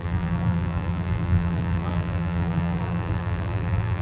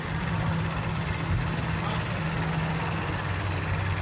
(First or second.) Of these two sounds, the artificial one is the first